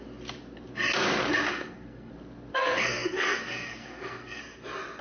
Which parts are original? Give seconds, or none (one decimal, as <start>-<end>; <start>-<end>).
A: 0.0-1.5; 2.1-2.5; 4.4-5.0

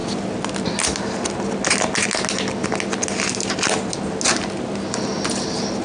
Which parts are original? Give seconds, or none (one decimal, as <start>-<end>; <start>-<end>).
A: 0.0-5.8

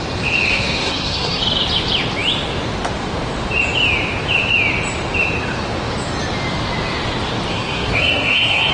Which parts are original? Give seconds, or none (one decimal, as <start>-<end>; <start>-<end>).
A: 0.0-0.5; 1.4-7.5

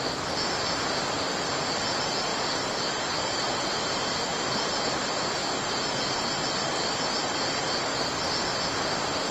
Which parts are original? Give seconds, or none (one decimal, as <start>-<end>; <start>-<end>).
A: 0.0-9.3